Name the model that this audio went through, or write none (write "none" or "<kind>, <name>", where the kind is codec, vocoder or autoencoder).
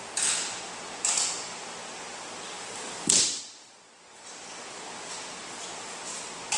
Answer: none